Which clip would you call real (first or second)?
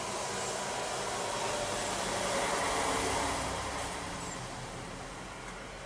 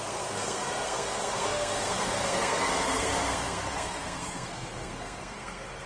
first